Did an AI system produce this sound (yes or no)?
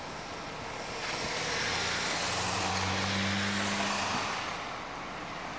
no